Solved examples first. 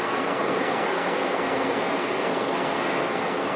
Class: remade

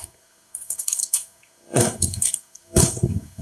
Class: remade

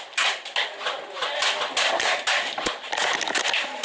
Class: recorded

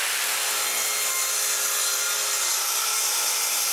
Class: recorded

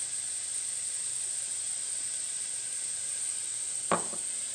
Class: recorded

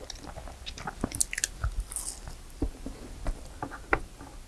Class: recorded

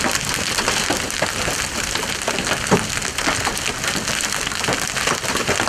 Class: recorded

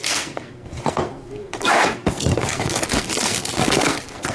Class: remade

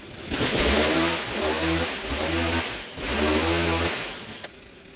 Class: recorded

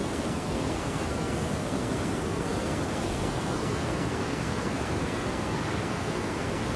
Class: remade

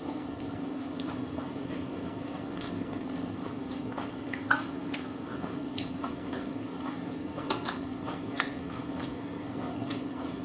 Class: remade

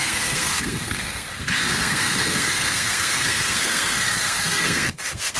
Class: remade